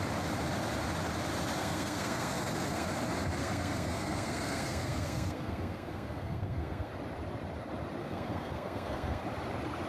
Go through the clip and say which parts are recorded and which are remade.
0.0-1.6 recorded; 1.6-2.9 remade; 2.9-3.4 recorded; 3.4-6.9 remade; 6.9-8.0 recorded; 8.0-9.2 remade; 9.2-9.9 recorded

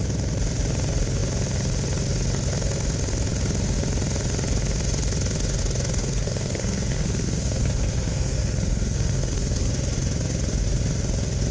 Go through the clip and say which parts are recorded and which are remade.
0.0-6.0 recorded; 6.0-9.7 remade; 9.7-11.5 recorded

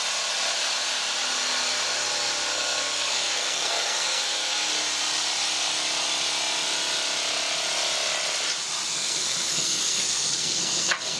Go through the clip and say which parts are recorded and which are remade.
0.0-2.5 recorded; 2.5-4.7 remade; 4.7-8.9 recorded; 8.9-11.2 remade

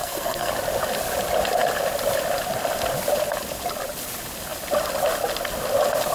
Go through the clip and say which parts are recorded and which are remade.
0.0-0.5 remade; 0.5-6.1 recorded

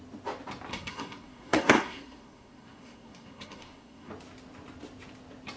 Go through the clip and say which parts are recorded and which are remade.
0.0-0.7 recorded; 0.7-4.1 remade; 4.1-5.6 recorded

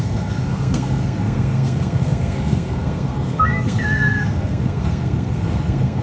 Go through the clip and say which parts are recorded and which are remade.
0.0-6.0 remade

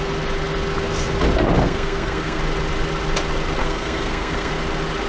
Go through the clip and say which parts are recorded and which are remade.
0.0-1.6 recorded; 1.6-2.4 remade; 2.4-3.6 recorded; 3.6-4.5 remade; 4.5-5.1 recorded

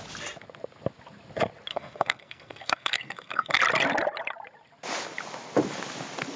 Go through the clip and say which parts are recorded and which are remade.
0.0-1.7 recorded; 1.7-3.6 remade; 3.6-6.4 recorded